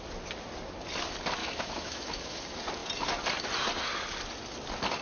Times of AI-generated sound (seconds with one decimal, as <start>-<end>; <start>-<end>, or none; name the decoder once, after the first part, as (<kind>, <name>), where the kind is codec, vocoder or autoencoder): 1.4-2.4 (autoencoder, DAC-VAE)